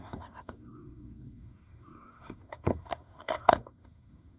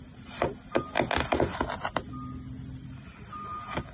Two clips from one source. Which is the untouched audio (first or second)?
second